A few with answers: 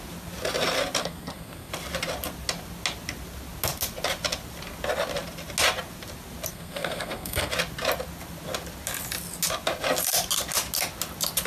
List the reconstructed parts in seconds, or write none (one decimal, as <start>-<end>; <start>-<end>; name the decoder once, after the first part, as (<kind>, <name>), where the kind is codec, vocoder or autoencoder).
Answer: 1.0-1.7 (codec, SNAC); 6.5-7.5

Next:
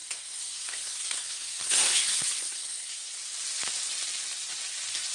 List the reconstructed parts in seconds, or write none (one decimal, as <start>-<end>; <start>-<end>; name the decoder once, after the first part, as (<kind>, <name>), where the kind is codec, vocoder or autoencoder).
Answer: 0.0-3.1 (codec, SNAC)

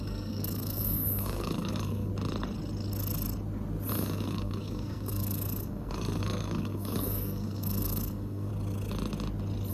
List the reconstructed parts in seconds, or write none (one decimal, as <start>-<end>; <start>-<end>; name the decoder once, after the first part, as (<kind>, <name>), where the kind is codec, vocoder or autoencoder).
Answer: 0.0-2.1 (codec, SNAC); 3.9-8.5

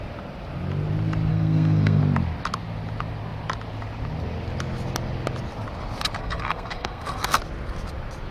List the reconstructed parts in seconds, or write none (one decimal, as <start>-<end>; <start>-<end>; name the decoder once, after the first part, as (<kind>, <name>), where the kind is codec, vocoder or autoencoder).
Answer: 1.3-2.0 (codec, SNAC); 6.2-7.4

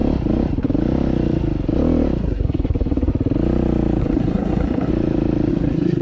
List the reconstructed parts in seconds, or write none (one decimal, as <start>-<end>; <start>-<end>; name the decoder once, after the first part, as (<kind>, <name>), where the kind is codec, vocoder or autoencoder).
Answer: 2.2-3.1 (codec, SNAC); 4.0-4.9; 5.5-6.0

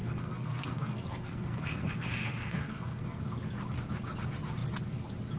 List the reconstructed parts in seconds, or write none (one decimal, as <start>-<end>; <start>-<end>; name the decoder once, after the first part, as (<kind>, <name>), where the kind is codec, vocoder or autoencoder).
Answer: 0.0-3.2 (codec, SNAC)

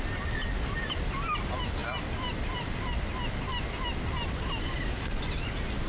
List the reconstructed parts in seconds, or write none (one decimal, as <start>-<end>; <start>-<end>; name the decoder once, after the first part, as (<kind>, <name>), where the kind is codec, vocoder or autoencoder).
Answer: none